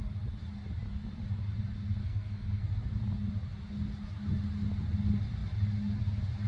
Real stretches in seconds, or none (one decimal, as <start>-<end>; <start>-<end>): 0.0-2.0; 2.7-6.5